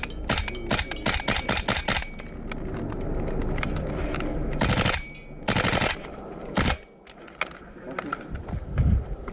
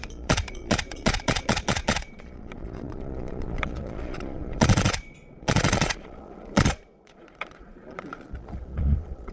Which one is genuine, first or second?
first